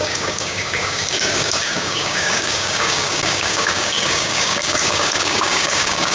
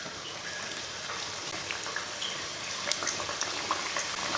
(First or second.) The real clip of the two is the second